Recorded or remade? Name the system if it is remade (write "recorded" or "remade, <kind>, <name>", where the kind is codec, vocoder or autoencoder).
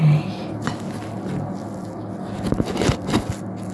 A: recorded